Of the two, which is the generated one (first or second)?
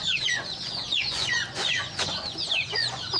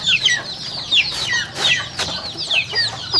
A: first